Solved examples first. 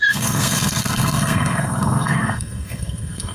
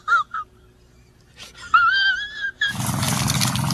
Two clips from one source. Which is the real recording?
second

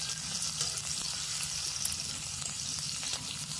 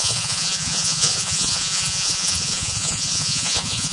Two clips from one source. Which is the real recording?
first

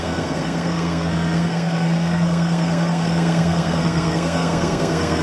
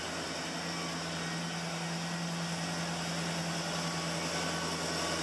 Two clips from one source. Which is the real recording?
second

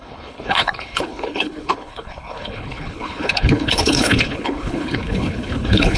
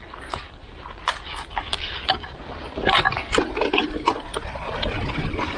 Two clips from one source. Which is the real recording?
second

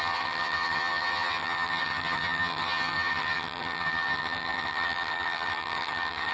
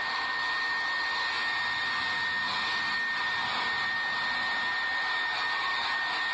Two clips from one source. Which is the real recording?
second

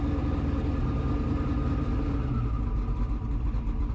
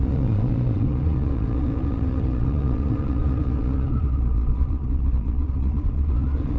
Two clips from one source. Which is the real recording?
first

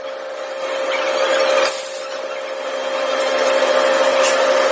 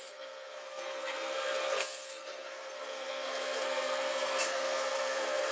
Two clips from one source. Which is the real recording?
first